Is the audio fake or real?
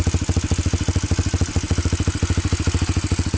real